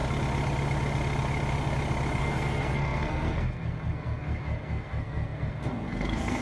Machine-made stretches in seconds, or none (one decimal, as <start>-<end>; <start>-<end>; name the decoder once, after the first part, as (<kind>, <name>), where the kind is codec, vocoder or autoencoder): 2.2-6.4 (codec, SNAC)